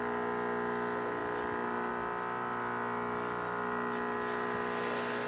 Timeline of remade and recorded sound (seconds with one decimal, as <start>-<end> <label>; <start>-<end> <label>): 0.0-5.3 recorded